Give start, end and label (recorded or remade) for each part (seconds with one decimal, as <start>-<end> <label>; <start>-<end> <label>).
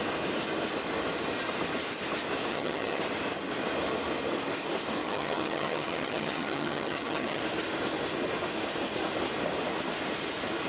0.0-2.5 recorded; 2.5-3.0 remade; 3.0-5.0 recorded; 5.0-7.4 remade; 7.4-10.7 recorded